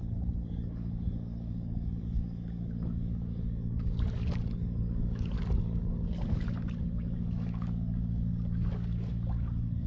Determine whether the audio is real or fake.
fake